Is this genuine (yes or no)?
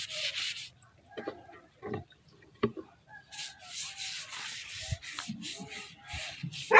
no